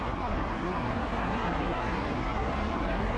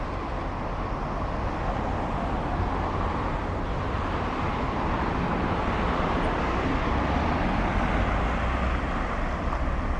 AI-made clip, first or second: first